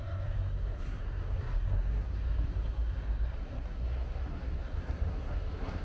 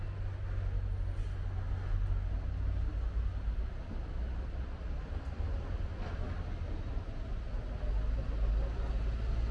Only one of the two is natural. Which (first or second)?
second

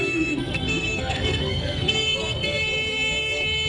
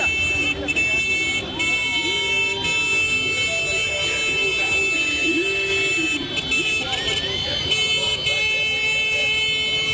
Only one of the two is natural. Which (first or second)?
second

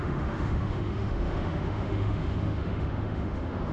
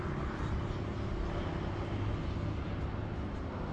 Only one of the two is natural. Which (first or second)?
second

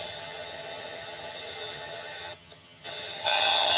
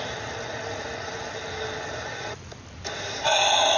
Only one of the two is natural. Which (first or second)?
second